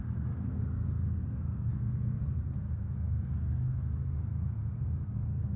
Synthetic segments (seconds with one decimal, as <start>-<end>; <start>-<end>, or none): 0.0-5.6